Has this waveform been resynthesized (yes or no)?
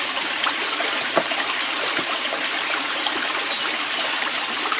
yes